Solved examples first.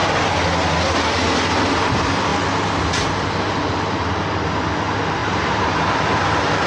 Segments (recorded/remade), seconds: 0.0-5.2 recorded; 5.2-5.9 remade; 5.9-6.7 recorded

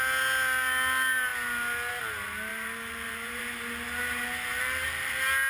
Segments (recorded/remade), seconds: 0.0-2.5 recorded; 2.5-3.6 remade; 3.6-4.5 recorded; 4.5-5.1 remade; 5.1-5.5 recorded